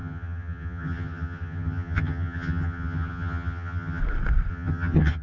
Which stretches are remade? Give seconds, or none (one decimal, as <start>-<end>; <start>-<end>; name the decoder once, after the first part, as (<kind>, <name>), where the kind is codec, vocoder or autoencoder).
0.0-4.0 (vocoder, HiFi-GAN); 4.5-5.2